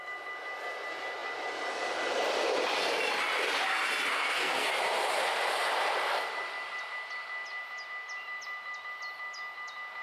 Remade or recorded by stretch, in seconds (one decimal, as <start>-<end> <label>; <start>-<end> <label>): 0.0-4.1 recorded; 4.1-4.7 remade; 4.7-10.0 recorded